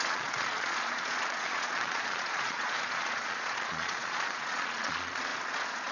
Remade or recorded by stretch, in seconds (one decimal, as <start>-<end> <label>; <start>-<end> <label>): 0.0-5.9 remade